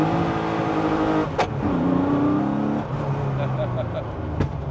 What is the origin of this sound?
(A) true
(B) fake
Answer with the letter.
A